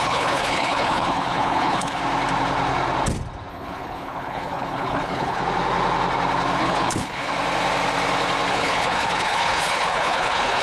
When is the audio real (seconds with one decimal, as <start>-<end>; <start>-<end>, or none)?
2.0-3.5; 5.4-6.6; 7.3-8.5